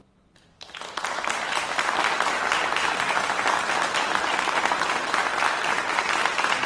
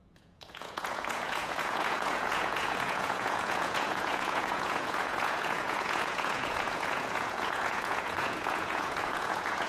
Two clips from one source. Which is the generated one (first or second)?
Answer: second